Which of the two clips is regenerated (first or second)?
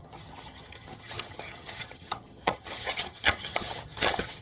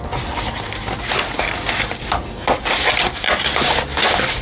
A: first